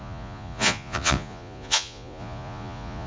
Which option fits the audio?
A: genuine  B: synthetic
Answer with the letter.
B